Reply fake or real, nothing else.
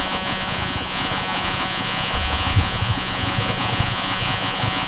fake